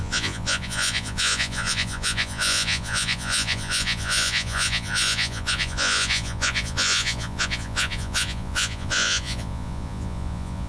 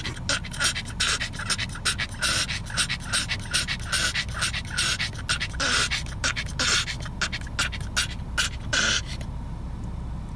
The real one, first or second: second